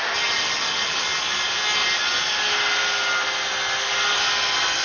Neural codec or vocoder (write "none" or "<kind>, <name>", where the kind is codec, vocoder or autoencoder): none